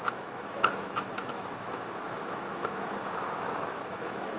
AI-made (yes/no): yes